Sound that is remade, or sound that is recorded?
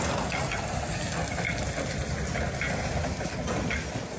recorded